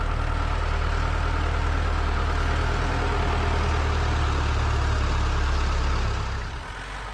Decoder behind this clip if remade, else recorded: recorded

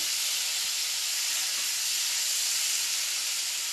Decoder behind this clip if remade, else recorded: recorded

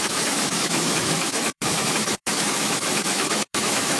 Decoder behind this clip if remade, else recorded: remade, autoencoder, DAC-VAE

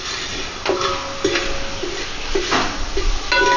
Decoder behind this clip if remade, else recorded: recorded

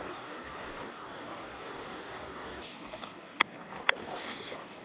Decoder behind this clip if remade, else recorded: remade, codec, DAC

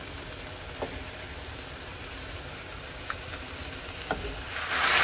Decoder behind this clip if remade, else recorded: recorded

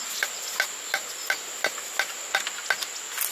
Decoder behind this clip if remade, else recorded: recorded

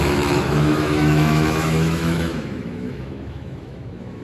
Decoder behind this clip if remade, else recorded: remade, autoencoder, DAC-VAE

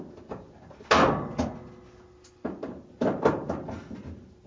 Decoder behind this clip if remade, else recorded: recorded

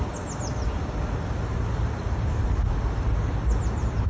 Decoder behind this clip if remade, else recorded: recorded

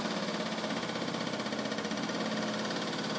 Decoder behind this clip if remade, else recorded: recorded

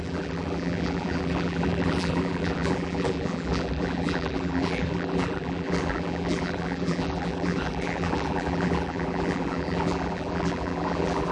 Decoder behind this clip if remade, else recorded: remade, vocoder, BigVGAN v2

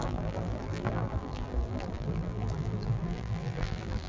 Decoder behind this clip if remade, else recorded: remade, vocoder, BigVGAN v2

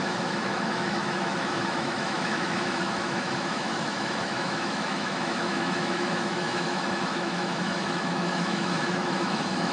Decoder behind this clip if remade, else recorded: remade, autoencoder, DAC-VAE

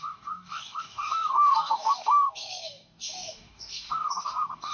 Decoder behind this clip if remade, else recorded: remade, codec, DAC